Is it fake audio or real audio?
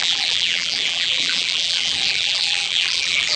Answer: fake